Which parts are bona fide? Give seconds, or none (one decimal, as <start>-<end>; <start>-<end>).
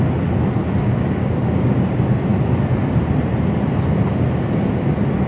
0.0-0.6; 1.9-5.3